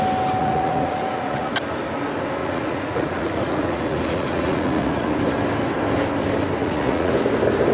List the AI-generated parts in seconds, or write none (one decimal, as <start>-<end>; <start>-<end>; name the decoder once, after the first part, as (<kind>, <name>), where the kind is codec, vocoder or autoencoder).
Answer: 0.4-1.5 (vocoder, Vocos); 2.4-5.2; 6.6-7.1